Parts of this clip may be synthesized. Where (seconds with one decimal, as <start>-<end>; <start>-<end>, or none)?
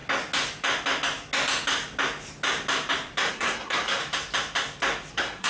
3.3-4.0; 5.1-5.5